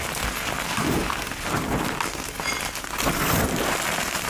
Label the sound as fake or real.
real